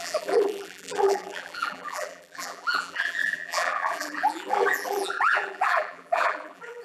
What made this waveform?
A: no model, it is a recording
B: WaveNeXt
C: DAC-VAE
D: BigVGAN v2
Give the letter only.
D